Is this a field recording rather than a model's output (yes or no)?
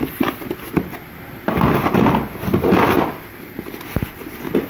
yes